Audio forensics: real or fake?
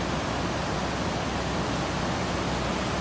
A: real